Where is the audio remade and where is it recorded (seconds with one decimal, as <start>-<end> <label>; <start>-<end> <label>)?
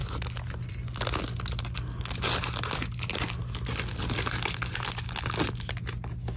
0.0-6.4 recorded